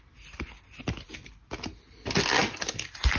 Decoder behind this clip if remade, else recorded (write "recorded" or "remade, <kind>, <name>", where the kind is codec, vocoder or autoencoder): recorded